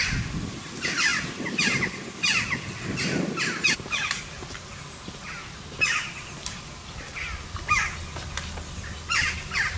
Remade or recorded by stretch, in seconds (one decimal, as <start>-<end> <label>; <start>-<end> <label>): 0.0-9.8 recorded